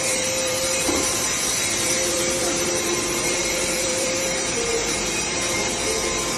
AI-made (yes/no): yes